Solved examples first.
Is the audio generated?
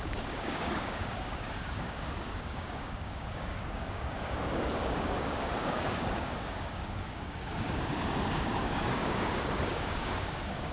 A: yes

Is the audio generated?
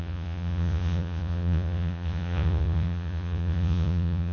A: yes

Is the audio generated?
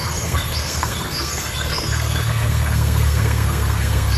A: yes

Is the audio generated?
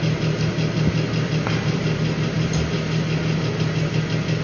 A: no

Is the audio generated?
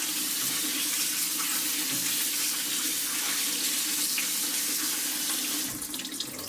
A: no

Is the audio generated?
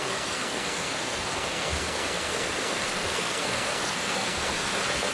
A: yes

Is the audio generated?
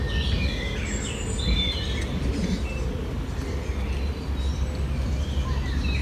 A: no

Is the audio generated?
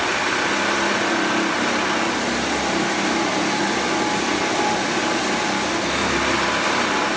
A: no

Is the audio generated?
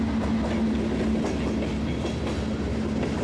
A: no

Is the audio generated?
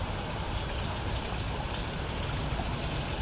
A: no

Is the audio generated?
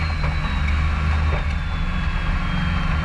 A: no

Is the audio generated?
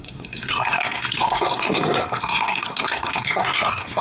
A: yes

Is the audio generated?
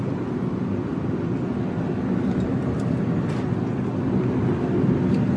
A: no